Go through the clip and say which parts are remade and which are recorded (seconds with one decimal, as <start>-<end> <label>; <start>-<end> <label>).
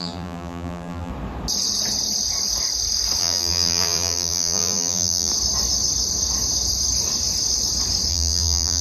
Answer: 0.0-1.1 remade; 1.1-3.2 recorded; 3.2-5.3 remade; 5.3-8.1 recorded; 8.1-8.8 remade